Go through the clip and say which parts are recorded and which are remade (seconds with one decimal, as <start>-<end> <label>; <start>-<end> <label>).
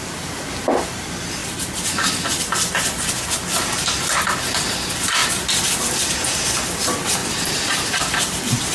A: 0.0-1.4 recorded; 1.4-3.0 remade; 3.0-7.2 recorded; 7.2-8.7 remade